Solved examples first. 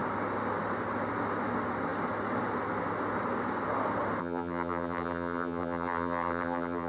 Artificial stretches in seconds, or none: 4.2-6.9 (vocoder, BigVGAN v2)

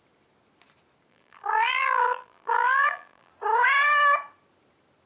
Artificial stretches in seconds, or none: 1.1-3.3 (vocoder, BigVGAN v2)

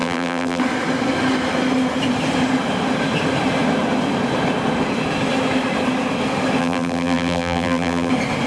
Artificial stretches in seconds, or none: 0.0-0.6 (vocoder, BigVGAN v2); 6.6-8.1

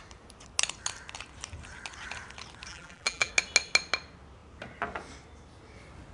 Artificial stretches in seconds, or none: 2.7-3.3 (vocoder, BigVGAN v2)

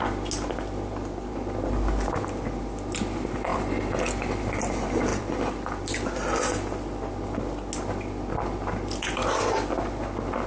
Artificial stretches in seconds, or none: 3.5-4.4 (vocoder, BigVGAN v2); 5.1-5.8

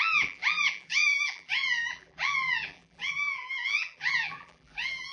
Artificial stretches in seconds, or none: 0.0-5.1 (vocoder, BigVGAN v2)

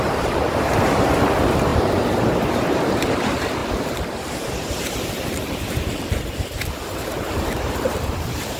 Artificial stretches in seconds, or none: 0.0-8.6 (vocoder, BigVGAN v2)